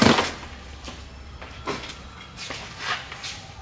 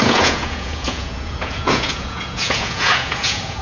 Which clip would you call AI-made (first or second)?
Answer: second